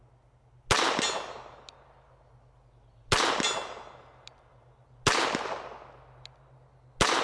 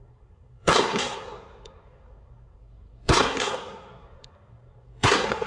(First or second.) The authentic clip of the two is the first